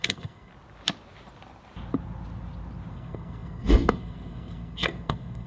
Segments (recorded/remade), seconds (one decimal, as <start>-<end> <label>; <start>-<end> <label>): 0.0-0.5 remade; 0.5-2.9 recorded; 2.9-5.5 remade